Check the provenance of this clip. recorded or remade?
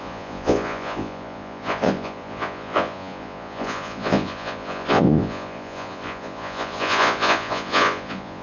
remade